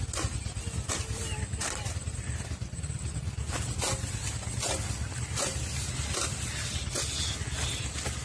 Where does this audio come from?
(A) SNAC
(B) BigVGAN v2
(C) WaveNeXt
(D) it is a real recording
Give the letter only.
D